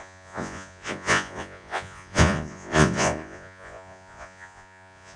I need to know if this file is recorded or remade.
remade